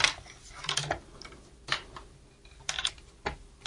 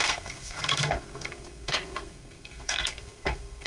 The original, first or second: first